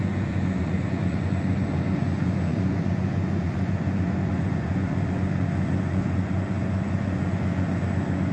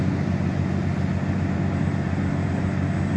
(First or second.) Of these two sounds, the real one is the second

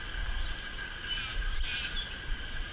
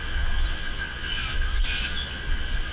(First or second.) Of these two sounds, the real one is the first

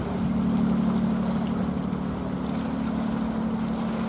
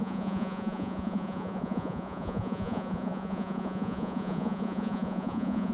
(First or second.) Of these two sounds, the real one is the first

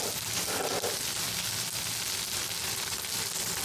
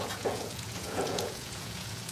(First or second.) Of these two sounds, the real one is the first